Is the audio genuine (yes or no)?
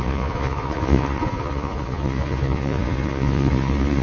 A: no